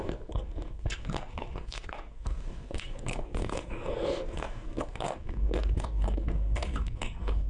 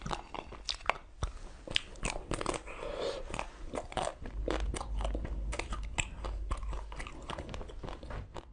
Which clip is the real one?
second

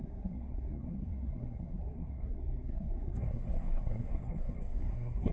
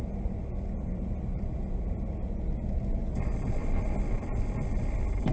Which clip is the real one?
second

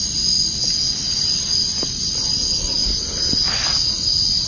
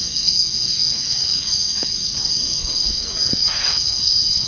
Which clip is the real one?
first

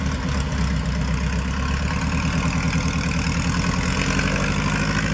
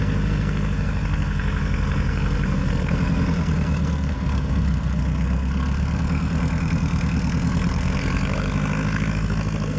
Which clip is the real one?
first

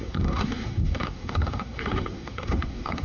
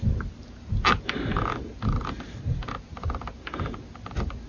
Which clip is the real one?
second